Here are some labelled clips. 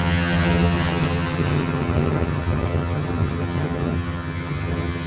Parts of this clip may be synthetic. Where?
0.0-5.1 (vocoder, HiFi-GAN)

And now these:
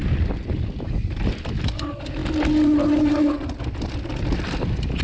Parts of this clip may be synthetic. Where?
none

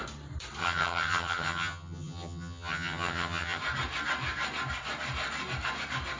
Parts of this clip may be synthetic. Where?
0.6-3.6 (vocoder, HiFi-GAN)

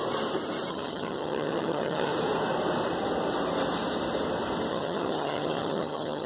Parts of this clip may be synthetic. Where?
0.7-2.1 (vocoder, HiFi-GAN); 4.7-6.3

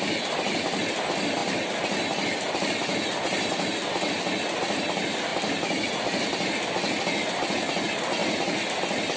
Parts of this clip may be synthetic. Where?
none

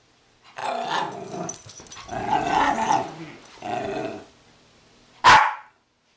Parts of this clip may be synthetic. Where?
none